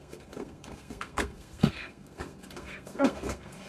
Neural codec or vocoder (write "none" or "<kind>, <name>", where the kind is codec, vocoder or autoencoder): codec, SNAC